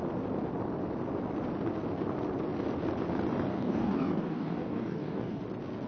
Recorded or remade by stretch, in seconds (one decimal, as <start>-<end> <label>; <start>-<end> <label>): 0.0-3.5 recorded; 3.5-5.4 remade; 5.4-5.9 recorded